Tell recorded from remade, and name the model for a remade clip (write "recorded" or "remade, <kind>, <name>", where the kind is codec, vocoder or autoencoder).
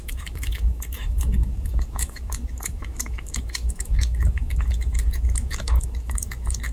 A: remade, autoencoder, DAC-VAE